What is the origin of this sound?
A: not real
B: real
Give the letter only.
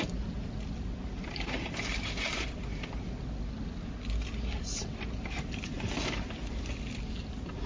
B